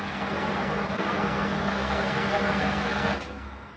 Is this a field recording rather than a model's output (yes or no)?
no